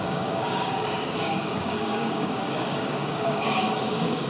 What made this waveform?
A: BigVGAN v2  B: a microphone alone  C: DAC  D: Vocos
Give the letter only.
C